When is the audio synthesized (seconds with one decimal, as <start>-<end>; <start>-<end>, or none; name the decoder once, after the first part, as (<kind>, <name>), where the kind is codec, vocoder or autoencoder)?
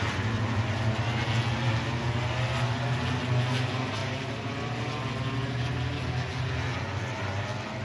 4.0-4.9 (vocoder, BigVGAN v2)